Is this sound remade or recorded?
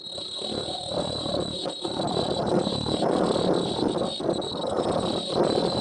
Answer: recorded